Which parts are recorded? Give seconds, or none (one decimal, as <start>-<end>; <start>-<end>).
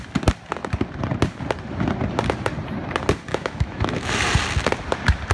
0.0-3.3; 4.1-5.3